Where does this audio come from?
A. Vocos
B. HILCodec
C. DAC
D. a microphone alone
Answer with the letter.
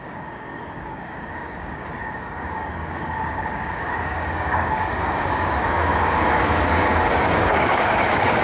C